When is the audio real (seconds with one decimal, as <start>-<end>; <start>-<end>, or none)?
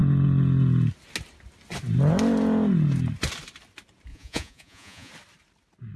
0.0-4.1; 5.1-6.0